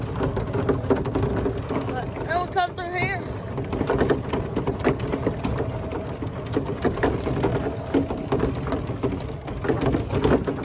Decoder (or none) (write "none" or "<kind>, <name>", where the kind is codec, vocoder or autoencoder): none